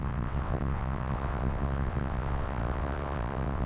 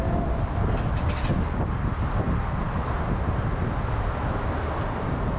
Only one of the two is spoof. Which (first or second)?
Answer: first